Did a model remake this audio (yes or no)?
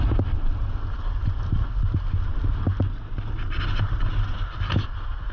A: no